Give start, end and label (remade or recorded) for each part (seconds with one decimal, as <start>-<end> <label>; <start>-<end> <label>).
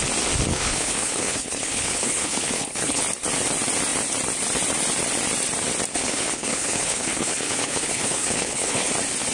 0.0-0.5 recorded; 0.5-3.0 remade; 3.0-6.0 recorded; 6.0-8.9 remade; 8.9-9.3 recorded